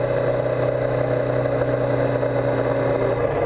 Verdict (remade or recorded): recorded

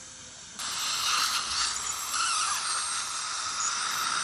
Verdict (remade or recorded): recorded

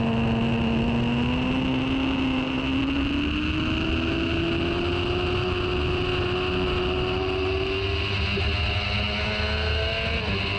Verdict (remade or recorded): recorded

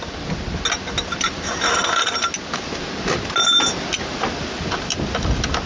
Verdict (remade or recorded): recorded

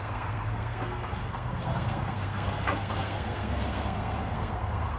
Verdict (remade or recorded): remade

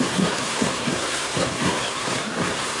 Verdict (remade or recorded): remade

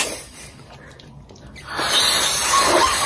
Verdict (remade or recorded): recorded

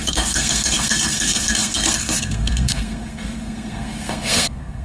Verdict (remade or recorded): remade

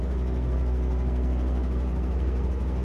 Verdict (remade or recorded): remade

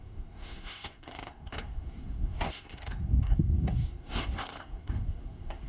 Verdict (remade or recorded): remade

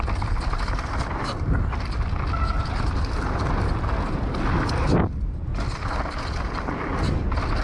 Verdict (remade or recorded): recorded